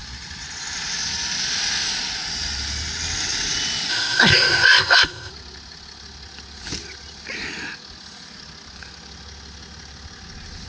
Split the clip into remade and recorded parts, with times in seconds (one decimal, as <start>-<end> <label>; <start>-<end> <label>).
0.0-3.9 recorded; 3.9-5.3 remade; 5.3-10.7 recorded